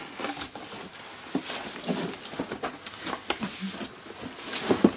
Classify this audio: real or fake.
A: real